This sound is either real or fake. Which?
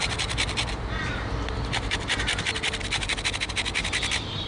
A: real